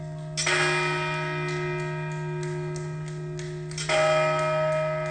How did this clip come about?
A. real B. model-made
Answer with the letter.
A